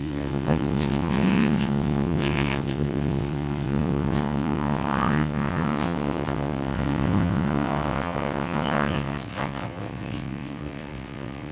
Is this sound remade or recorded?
remade